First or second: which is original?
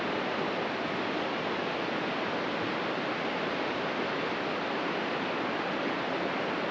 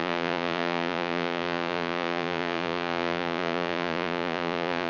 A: first